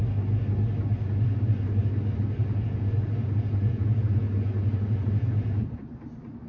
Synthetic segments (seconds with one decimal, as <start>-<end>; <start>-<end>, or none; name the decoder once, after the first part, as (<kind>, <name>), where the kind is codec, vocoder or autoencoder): 2.4-5.8 (vocoder, Vocos)

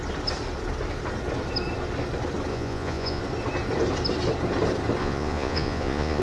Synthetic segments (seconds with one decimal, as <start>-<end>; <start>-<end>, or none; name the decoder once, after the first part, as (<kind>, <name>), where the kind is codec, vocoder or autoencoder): 2.5-3.2 (vocoder, Vocos); 5.0-6.2

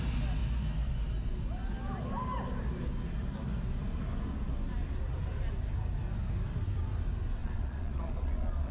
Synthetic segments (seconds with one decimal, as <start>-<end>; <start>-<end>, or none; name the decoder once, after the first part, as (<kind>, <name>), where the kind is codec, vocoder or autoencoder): 7.4-8.7 (vocoder, Vocos)

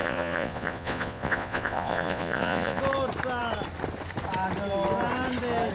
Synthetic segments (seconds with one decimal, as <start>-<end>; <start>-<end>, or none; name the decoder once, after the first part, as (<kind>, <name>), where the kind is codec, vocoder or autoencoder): 0.0-2.8 (vocoder, Vocos)